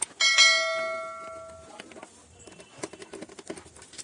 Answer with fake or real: real